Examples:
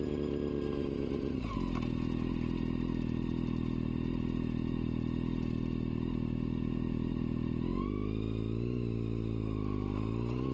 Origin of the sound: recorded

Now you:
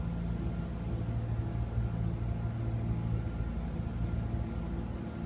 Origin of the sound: recorded